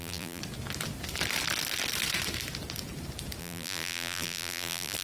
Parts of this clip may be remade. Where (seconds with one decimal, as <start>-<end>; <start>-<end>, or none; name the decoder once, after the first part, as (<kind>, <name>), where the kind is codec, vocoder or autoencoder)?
0.0-0.4 (vocoder, BigVGAN v2); 3.4-5.0